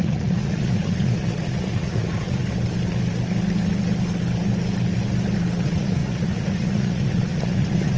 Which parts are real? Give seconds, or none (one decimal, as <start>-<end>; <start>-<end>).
2.4-5.6